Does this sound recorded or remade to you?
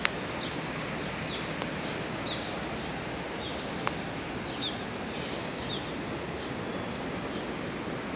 recorded